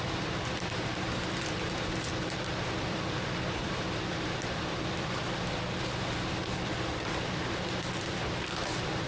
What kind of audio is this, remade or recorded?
remade